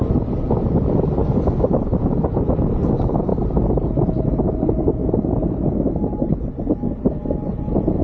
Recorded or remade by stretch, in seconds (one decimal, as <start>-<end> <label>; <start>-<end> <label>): 0.0-8.0 recorded